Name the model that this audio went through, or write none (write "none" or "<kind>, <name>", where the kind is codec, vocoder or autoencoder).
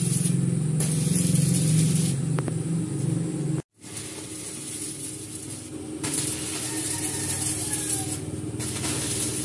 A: none